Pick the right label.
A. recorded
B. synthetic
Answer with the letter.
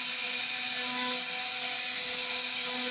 A